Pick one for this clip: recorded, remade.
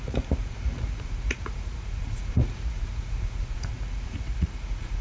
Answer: remade